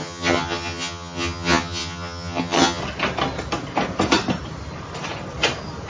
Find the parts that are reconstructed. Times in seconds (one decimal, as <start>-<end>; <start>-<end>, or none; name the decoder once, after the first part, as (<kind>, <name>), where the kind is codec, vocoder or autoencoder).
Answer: 0.0-2.8 (vocoder, HiFi-GAN)

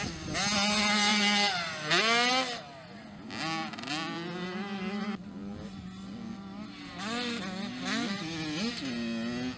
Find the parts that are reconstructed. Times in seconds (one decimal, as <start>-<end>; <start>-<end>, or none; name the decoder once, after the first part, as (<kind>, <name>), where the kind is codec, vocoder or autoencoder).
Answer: none

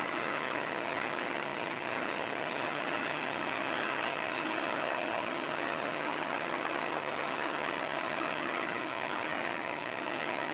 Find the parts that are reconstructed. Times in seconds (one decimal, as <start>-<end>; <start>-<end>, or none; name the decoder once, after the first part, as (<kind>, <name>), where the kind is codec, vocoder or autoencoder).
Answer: 0.0-10.5 (vocoder, HiFi-GAN)

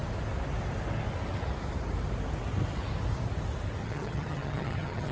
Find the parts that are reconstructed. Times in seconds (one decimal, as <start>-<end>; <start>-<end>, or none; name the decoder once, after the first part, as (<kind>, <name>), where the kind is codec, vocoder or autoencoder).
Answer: 3.8-5.1 (vocoder, HiFi-GAN)

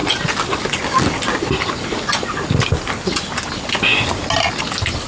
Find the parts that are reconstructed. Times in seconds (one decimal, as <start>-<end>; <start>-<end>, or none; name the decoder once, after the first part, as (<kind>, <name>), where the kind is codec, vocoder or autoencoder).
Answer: none

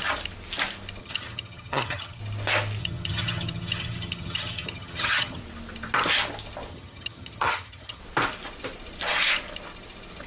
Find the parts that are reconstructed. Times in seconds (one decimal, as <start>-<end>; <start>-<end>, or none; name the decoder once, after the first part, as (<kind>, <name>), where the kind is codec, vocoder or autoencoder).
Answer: 1.0-2.2 (vocoder, HiFi-GAN); 2.8-5.4; 6.7-8.0

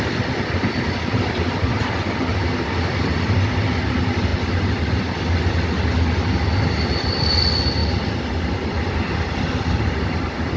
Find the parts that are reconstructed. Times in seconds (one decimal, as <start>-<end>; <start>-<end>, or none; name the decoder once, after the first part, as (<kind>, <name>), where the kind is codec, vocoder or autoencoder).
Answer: none